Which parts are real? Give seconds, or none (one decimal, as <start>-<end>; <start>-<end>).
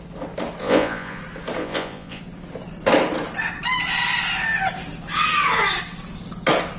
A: 0.0-0.6; 1.2-1.6; 2.2-6.8